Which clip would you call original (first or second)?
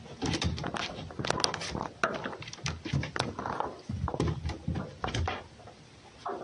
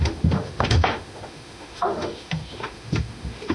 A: first